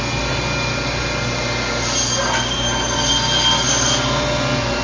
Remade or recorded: recorded